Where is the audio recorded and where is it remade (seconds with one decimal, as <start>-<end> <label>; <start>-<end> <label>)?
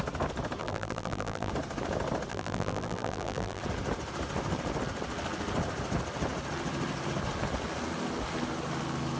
0.0-0.6 recorded; 0.6-1.5 remade; 1.5-2.3 recorded; 2.3-3.6 remade; 3.6-9.2 recorded